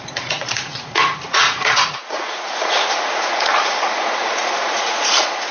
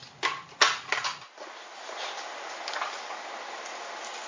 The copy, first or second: first